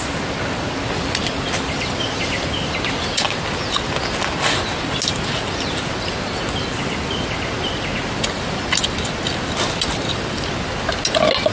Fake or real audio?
real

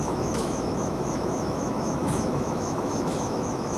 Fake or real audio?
fake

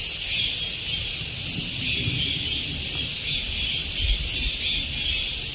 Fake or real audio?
real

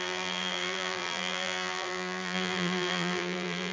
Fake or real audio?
fake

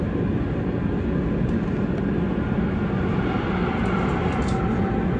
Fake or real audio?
real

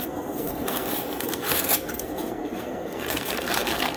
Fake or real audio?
fake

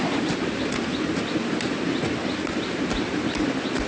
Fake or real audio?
real